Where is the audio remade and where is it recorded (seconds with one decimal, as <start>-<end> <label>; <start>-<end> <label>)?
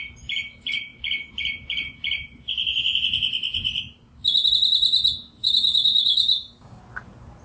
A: 0.0-5.4 recorded; 5.4-6.8 remade; 6.8-7.4 recorded